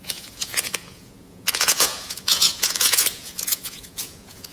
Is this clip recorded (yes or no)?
no